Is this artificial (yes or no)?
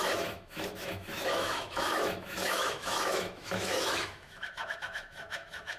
yes